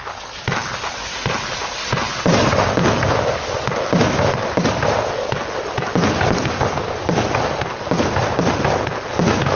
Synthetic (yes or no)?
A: no